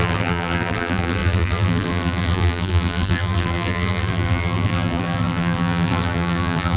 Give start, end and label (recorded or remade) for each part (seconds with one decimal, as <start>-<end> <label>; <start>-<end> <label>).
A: 0.0-6.8 remade